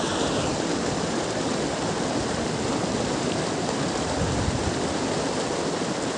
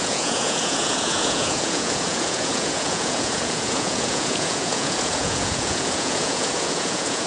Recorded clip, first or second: first